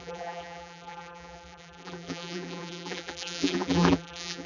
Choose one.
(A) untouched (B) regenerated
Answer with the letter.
B